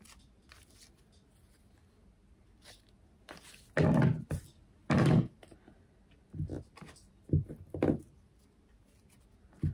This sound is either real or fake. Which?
real